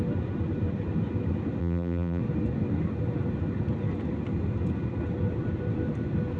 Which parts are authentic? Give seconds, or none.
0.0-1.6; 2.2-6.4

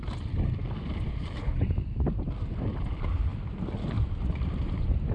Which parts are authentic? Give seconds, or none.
0.0-5.1

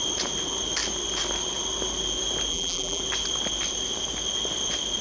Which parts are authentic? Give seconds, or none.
0.0-2.5; 3.0-5.0

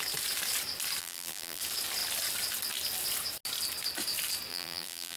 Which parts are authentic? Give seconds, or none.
0.0-1.0; 1.6-4.5